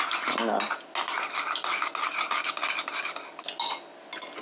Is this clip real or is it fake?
real